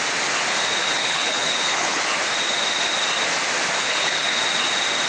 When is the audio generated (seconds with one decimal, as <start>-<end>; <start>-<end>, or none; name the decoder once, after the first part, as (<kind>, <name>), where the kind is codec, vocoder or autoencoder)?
0.8-2.0 (codec, HILCodec); 3.8-4.4